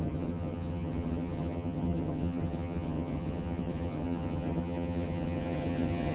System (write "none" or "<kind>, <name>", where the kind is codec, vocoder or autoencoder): vocoder, HiFi-GAN